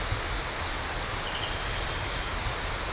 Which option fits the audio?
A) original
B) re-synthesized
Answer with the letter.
A